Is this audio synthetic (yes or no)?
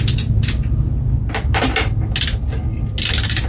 no